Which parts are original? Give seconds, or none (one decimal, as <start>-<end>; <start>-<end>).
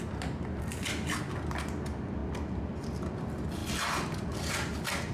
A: 0.0-5.1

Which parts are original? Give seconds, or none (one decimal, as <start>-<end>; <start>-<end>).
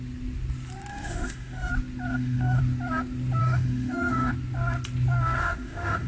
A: 0.0-0.9; 1.7-2.1; 2.6-3.4; 4.3-5.4